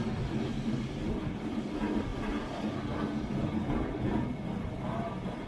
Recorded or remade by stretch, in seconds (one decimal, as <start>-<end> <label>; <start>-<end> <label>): 0.0-5.5 recorded